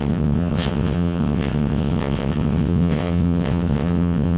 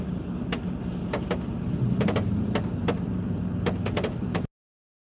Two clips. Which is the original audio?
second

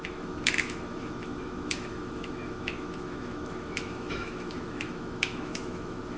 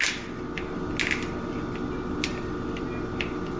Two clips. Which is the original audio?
second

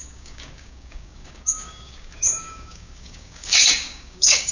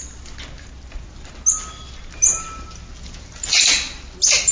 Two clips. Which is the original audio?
second